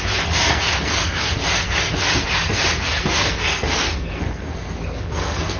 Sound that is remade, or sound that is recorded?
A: remade